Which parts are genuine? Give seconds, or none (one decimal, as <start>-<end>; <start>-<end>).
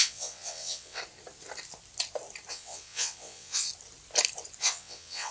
1.0-2.5; 3.7-4.6